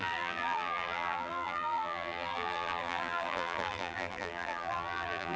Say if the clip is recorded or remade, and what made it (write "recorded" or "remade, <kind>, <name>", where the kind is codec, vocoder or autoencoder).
remade, vocoder, BigVGAN v2